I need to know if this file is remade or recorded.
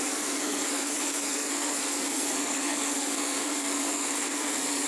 remade